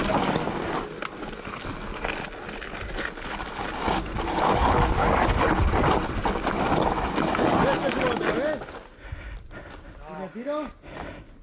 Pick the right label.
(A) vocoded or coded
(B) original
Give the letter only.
B